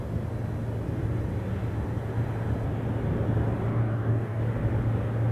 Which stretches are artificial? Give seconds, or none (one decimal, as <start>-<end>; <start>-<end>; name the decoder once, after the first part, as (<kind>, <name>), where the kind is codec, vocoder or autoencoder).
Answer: 3.7-4.4 (codec, DAC)